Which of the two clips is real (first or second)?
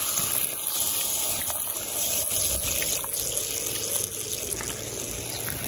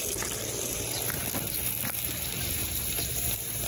first